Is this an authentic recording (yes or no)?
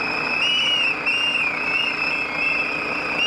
yes